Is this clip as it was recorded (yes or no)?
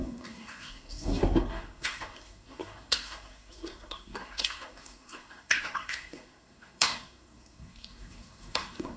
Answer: no